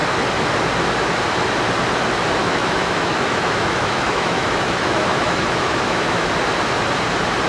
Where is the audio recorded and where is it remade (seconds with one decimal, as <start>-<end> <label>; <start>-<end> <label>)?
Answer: 0.0-2.4 recorded; 2.4-6.3 remade; 6.3-7.5 recorded